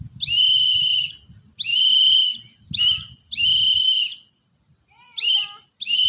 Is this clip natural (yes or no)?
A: yes